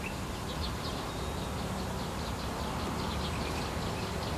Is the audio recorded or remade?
recorded